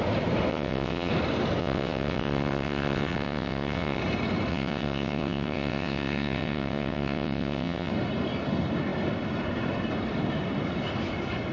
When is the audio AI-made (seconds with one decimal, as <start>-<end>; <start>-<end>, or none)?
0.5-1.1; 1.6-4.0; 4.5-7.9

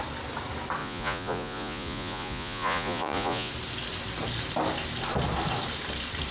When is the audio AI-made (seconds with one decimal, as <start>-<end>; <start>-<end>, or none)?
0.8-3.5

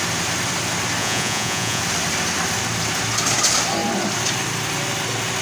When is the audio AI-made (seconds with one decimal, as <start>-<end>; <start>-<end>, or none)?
1.0-1.8

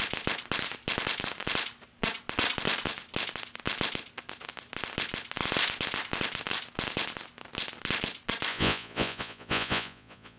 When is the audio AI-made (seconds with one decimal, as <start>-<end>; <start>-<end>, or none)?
8.5-10.4

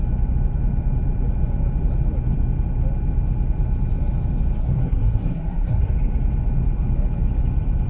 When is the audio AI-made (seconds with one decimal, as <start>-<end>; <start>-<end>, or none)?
4.6-5.9

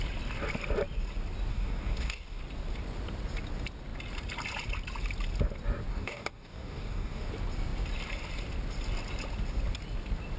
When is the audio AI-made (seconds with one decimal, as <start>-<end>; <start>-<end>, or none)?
1.5-2.4; 5.9-7.3